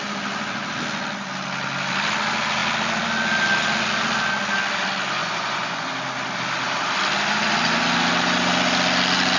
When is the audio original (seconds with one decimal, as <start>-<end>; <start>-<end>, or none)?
0.0-5.2; 5.9-9.4